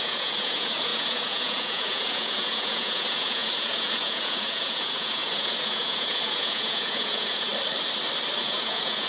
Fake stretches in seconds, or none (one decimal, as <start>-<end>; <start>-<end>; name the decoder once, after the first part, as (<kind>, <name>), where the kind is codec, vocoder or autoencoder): 0.0-7.5 (vocoder, Vocos); 8.4-9.1